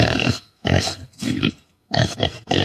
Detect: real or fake fake